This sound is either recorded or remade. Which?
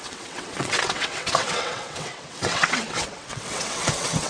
remade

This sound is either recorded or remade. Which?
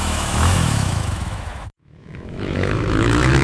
remade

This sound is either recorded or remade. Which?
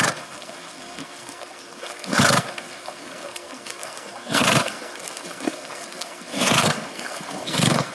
remade